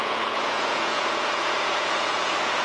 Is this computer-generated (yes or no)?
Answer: yes